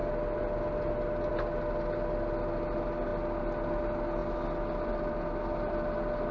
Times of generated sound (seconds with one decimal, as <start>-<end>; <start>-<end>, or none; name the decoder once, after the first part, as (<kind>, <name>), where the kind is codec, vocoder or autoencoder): none